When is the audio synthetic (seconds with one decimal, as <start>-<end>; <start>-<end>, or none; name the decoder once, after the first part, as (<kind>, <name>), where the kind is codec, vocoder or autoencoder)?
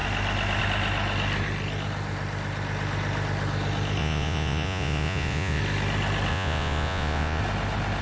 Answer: 4.0-5.6 (vocoder, Vocos); 6.3-7.4